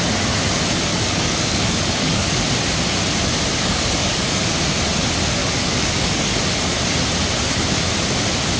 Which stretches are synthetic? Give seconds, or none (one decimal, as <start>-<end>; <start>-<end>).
0.9-2.4; 3.6-4.5; 5.4-6.4